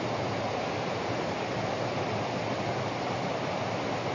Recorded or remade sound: recorded